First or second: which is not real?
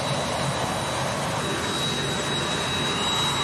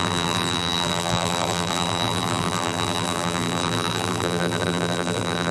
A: second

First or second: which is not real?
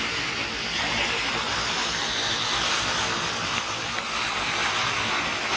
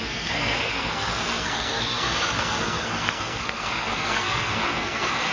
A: second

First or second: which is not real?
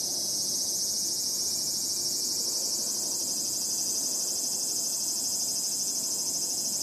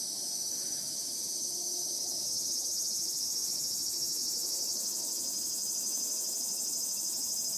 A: second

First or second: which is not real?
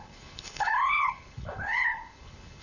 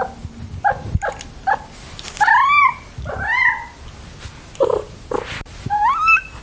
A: first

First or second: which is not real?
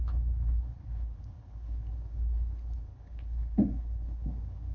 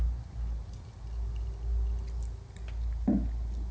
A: first